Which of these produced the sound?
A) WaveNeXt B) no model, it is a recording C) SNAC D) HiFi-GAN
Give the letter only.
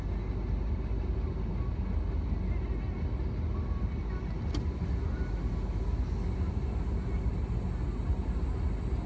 B